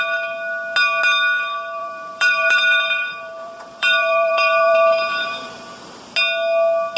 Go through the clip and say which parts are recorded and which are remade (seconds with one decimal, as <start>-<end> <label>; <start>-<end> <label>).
0.0-1.8 recorded; 1.8-6.0 remade; 6.0-7.0 recorded